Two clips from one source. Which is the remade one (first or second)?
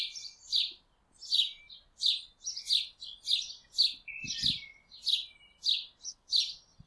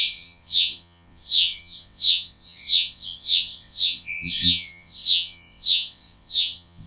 second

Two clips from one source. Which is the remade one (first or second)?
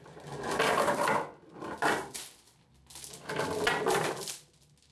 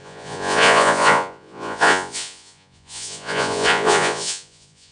second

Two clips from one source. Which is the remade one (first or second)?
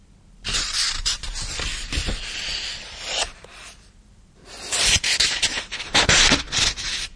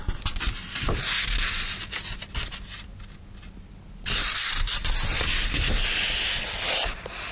first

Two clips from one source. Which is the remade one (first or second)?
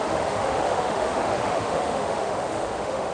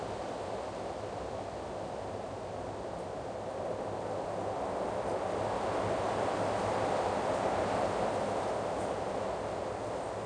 first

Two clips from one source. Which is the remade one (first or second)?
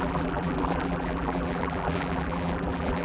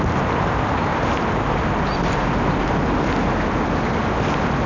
first